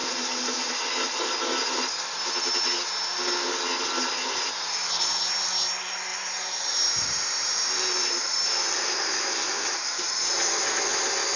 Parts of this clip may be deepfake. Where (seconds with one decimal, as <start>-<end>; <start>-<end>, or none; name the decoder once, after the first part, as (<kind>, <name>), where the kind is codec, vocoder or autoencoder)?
0.0-0.7 (vocoder, BigVGAN v2); 6.1-10.3